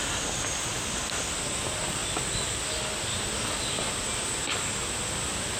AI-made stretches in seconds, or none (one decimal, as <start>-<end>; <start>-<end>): none